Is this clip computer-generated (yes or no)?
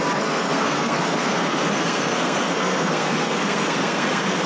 yes